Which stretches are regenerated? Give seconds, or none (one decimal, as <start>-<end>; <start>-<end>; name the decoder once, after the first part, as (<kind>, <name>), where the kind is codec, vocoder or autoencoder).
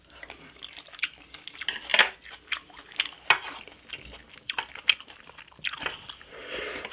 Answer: none